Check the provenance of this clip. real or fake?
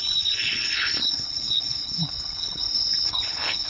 fake